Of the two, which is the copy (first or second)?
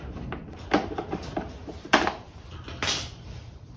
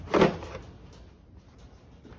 first